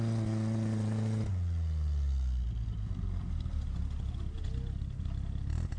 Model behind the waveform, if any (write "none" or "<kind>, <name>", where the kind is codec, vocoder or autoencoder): none